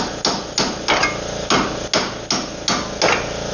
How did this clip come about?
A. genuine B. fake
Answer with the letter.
A